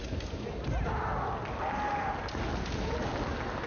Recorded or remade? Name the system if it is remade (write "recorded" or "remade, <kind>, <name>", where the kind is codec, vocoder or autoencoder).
recorded